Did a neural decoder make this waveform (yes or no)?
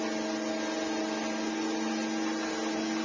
no